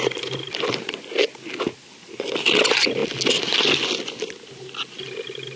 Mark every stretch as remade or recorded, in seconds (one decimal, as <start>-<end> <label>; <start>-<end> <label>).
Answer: 0.0-5.6 recorded